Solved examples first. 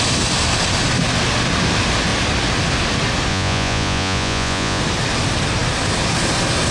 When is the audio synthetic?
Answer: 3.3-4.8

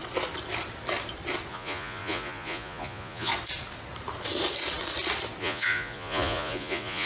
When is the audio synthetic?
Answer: 1.5-3.3; 5.4-7.1

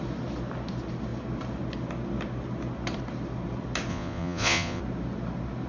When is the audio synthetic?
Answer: 3.9-4.8

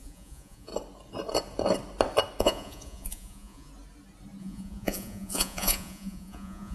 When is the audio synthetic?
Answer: 0.0-0.7; 2.4-3.7; 4.4-6.7

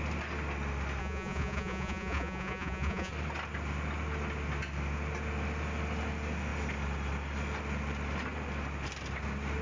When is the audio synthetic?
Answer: 1.0-3.1

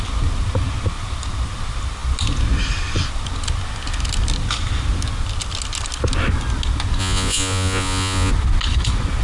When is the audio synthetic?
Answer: 7.0-8.3

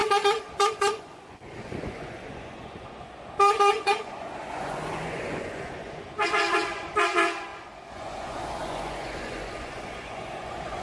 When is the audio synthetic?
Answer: 0.0-10.8